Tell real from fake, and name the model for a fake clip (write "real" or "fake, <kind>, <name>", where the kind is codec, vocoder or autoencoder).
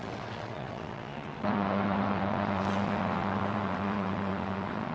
fake, vocoder, WaveNeXt